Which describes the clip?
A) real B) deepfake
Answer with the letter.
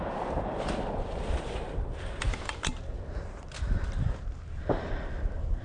A